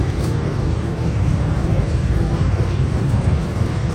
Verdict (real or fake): fake